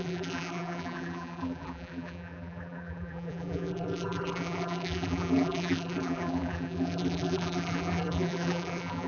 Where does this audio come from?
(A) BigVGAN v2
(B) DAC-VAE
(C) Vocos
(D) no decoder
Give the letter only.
A